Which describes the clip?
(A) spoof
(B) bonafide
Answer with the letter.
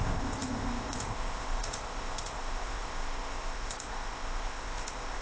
A